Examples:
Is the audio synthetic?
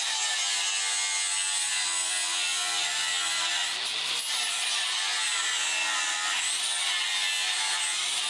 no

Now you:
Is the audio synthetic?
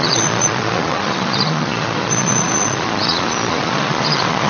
yes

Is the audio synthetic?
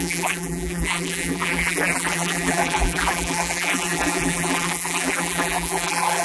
yes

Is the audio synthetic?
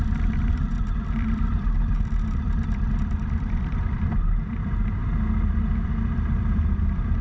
yes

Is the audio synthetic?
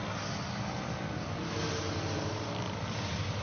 no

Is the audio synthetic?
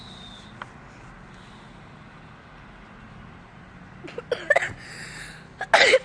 no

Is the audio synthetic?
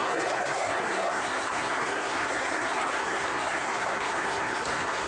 yes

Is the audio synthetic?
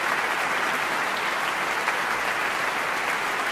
no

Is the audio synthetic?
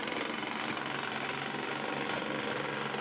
no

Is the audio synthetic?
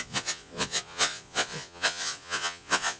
yes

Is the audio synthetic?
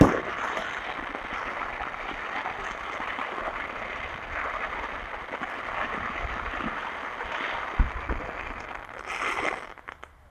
yes